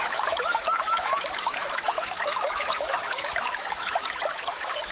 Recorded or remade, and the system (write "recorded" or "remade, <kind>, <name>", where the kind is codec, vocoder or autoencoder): remade, autoencoder, DAC-VAE